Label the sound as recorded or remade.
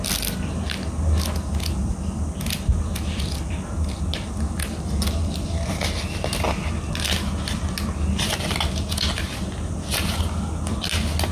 recorded